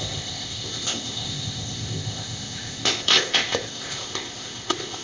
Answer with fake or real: fake